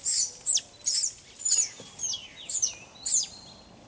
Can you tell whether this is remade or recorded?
recorded